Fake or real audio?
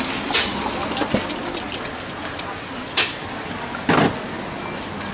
real